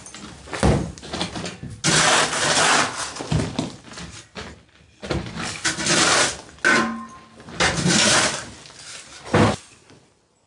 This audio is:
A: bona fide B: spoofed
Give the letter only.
A